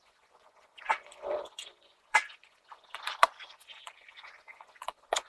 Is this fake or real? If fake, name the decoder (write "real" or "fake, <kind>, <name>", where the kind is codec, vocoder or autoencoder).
fake, vocoder, Vocos